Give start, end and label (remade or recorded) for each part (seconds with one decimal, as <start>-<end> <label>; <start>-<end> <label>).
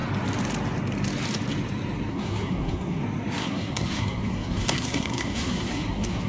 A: 0.0-2.1 recorded; 2.1-3.0 remade; 3.0-3.4 recorded; 3.4-6.3 remade